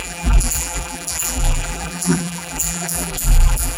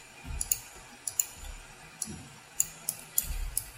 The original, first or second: second